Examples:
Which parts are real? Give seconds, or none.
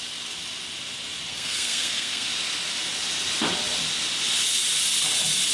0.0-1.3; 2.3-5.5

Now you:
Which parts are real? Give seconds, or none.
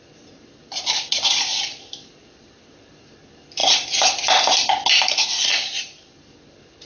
3.6-4.9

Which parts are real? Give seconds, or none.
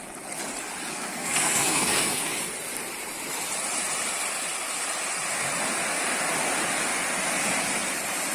0.0-0.9; 2.4-8.3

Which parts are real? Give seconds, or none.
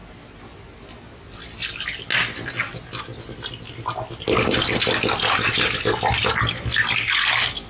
0.0-3.7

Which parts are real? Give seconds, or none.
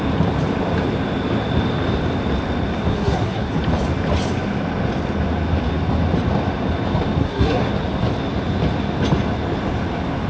0.0-2.9; 3.5-7.2; 7.7-10.3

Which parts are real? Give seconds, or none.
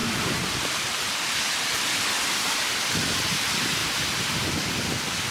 0.0-5.3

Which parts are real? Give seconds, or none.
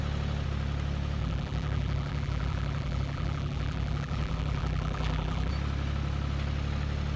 0.0-1.2; 5.5-7.2